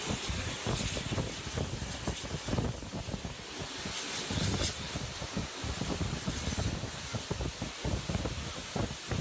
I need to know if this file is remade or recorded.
recorded